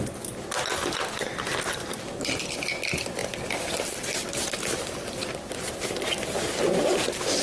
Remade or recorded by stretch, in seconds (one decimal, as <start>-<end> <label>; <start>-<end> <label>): 0.0-3.2 recorded; 3.2-4.3 remade; 4.3-5.2 recorded; 5.2-6.2 remade; 6.2-7.4 recorded